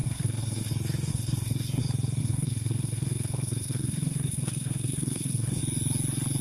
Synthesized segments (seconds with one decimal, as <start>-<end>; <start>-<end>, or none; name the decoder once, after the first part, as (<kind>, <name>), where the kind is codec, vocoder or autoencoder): 0.0-0.7 (codec, SNAC); 1.1-1.8; 2.2-5.6